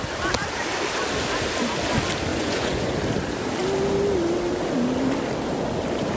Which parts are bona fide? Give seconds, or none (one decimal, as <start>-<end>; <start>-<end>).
0.0-2.3; 3.0-6.2